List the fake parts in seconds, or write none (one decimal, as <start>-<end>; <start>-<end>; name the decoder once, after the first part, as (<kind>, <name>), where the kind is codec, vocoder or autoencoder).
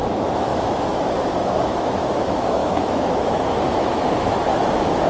0.0-5.1 (autoencoder, DAC-VAE)